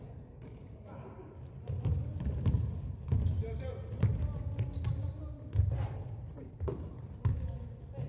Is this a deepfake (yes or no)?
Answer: no